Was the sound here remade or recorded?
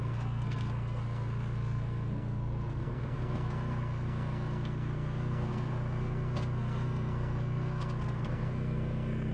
remade